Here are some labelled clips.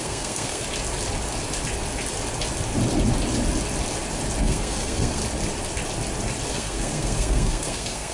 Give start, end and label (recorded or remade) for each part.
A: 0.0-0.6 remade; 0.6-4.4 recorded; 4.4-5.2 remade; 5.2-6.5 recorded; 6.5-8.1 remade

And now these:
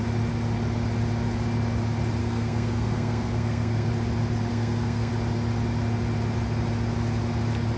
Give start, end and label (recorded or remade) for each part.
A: 0.0-2.2 recorded; 2.2-3.9 remade; 3.9-4.5 recorded; 4.5-5.1 remade; 5.1-7.8 recorded

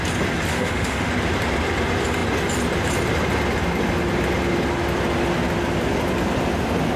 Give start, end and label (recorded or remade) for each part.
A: 0.0-0.5 recorded; 0.5-1.1 remade; 1.1-7.0 recorded

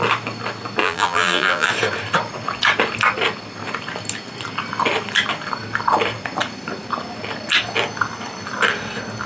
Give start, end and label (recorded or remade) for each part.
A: 0.0-0.8 recorded; 0.8-1.7 remade; 1.7-9.3 recorded

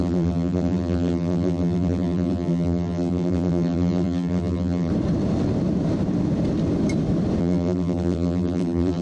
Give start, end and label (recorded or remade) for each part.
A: 0.0-4.9 remade; 4.9-7.4 recorded; 7.4-9.0 remade

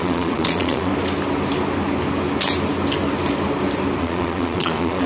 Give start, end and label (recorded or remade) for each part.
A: 0.0-0.9 remade; 0.9-4.0 recorded; 4.0-5.1 remade

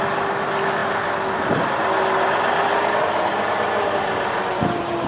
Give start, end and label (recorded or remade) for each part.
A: 0.0-5.1 recorded

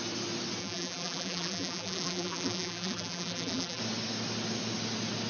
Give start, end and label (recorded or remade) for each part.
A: 0.0-0.6 recorded; 0.6-3.8 remade; 3.8-5.3 recorded